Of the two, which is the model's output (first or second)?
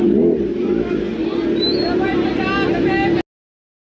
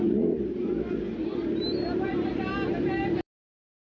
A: second